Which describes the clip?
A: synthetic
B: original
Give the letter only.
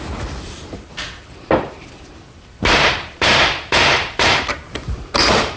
A